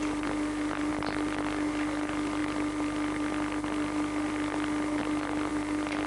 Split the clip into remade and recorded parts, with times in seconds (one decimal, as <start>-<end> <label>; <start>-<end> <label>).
0.0-6.1 recorded